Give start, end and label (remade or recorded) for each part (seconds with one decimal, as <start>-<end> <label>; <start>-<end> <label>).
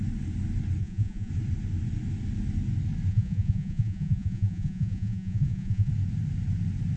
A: 0.0-0.8 recorded; 0.8-1.3 remade; 1.3-3.1 recorded; 3.1-5.9 remade; 5.9-7.0 recorded